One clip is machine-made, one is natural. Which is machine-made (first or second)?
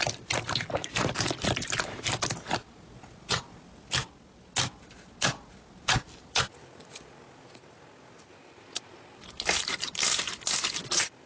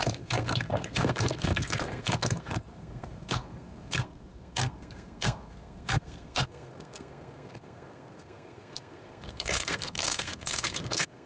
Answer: second